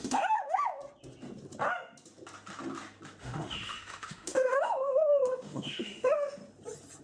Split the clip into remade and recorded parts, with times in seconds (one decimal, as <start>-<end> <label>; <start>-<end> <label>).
0.0-0.8 remade; 0.8-3.2 recorded; 3.2-6.4 remade; 6.4-7.0 recorded